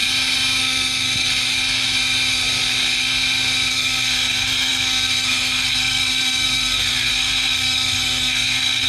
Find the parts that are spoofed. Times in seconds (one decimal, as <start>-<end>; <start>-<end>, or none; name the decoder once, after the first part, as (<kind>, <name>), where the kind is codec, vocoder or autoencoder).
0.6-1.3 (codec, SNAC); 3.7-8.9